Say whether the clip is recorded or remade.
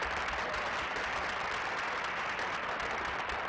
recorded